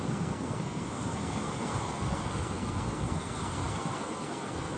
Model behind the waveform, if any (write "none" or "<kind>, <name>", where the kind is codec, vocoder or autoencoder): codec, SNAC